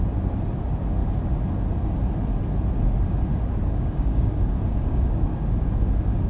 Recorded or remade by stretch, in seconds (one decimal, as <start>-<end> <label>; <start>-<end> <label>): 0.0-3.3 recorded; 3.3-6.3 remade